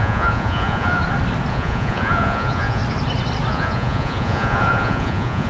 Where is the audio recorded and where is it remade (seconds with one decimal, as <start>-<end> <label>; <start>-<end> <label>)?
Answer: 0.0-1.0 remade; 1.0-1.5 recorded; 1.5-2.8 remade; 2.8-3.5 recorded; 3.5-5.5 remade